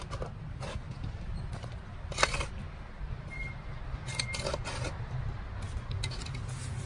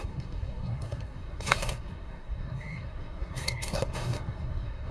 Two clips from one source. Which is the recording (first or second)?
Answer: first